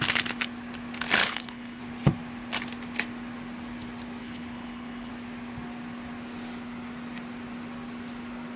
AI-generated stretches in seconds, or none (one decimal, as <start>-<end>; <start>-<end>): 1.2-1.8; 4.2-5.1